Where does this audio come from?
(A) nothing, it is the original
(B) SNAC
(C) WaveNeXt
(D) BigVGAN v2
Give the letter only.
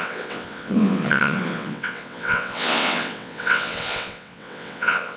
C